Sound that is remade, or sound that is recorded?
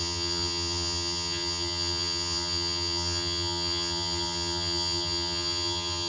remade